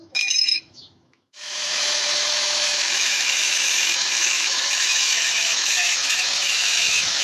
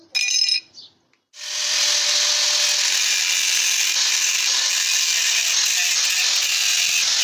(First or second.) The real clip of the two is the second